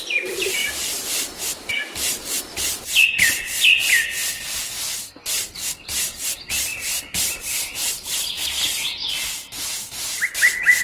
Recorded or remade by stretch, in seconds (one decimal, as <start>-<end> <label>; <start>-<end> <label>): 0.0-4.2 remade; 4.2-5.7 recorded; 5.7-8.4 remade; 8.4-10.8 recorded